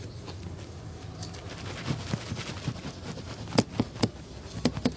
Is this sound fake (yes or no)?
no